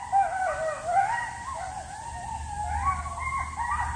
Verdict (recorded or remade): recorded